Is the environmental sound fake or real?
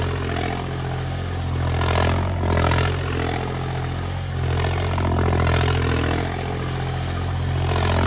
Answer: real